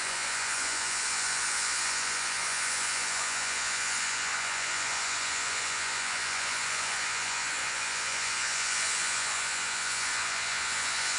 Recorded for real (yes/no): no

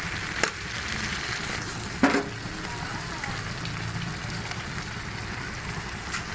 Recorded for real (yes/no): yes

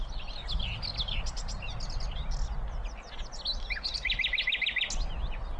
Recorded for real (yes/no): yes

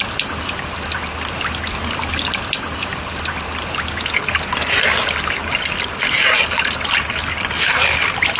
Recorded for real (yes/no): yes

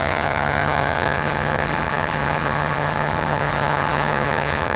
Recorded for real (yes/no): no